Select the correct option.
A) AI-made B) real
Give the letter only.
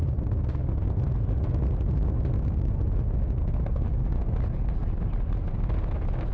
B